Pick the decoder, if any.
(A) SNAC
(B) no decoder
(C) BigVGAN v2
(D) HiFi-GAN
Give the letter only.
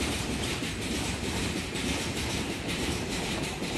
C